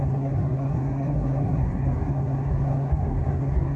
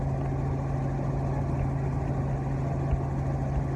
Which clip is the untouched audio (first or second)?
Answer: second